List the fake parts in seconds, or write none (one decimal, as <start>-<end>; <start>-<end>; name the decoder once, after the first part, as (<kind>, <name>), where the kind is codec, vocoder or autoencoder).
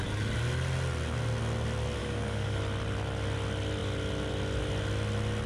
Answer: 2.0-2.6 (codec, DAC)